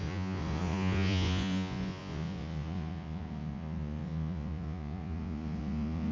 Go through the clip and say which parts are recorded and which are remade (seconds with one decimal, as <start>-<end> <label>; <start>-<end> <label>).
0.0-6.1 remade